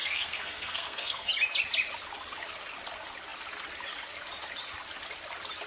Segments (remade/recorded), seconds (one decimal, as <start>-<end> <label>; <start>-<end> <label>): 0.0-1.3 remade; 1.3-5.7 recorded